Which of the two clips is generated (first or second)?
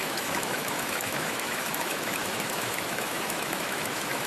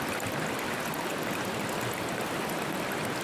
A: first